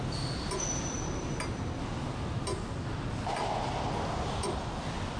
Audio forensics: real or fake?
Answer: real